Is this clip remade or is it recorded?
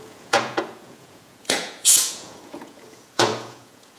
remade